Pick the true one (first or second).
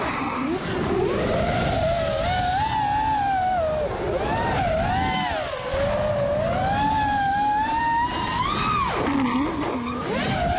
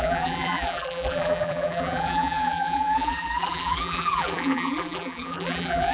first